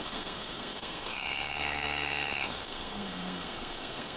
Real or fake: fake